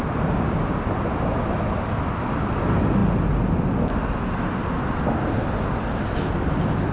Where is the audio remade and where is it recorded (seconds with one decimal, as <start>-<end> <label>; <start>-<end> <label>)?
0.0-6.9 recorded